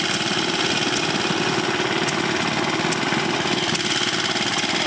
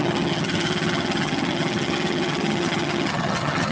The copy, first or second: second